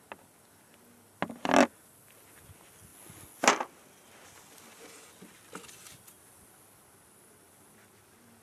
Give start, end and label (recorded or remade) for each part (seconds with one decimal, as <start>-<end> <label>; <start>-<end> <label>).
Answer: 0.0-8.4 recorded

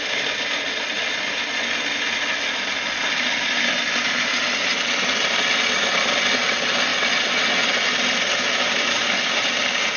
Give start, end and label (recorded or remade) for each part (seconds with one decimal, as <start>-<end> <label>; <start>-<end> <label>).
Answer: 0.0-10.0 recorded